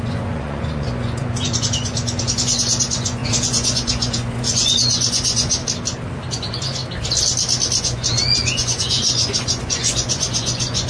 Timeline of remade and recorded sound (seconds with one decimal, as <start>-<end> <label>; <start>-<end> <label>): 0.0-5.6 remade; 5.6-6.3 recorded; 6.3-6.8 remade; 6.8-7.8 recorded; 7.8-10.9 remade